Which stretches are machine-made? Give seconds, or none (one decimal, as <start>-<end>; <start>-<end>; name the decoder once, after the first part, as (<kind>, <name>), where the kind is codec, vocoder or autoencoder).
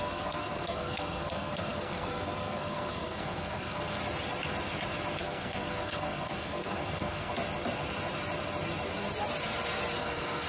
0.0-4.0 (codec, SNAC); 5.2-7.3; 10.0-10.5